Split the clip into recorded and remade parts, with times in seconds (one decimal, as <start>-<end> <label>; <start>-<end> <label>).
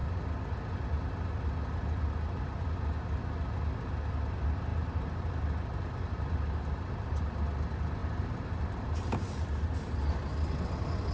0.0-4.7 recorded; 4.7-7.3 remade; 7.3-8.0 recorded; 8.0-9.5 remade; 9.5-11.1 recorded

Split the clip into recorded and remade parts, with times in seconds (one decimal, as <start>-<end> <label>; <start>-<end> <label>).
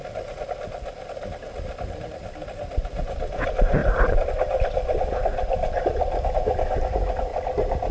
0.0-3.8 recorded; 3.8-4.3 remade; 4.3-7.9 recorded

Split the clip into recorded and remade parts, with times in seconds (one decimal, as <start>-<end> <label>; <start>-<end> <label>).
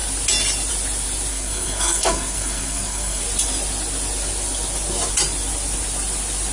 0.0-1.3 recorded; 1.3-3.2 remade; 3.2-6.5 recorded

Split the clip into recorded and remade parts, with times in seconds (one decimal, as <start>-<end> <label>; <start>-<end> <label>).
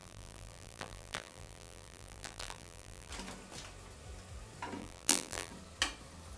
0.0-3.1 remade; 3.1-4.8 recorded; 4.8-5.5 remade; 5.5-6.4 recorded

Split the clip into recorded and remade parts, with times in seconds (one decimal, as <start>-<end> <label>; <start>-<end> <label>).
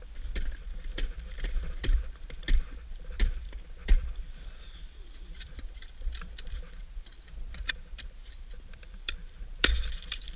0.0-7.1 remade; 7.1-7.6 recorded; 7.6-10.4 remade